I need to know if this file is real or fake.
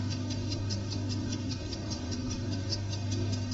fake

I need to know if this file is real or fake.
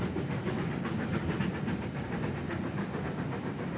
real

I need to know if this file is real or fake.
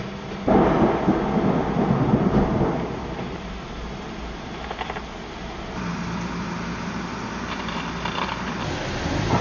real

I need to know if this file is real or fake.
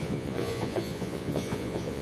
fake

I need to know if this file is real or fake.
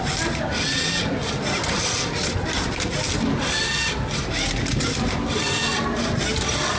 real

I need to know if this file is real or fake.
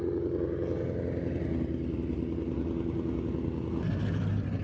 real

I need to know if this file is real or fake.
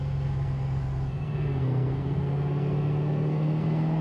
fake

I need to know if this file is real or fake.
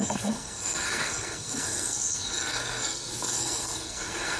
fake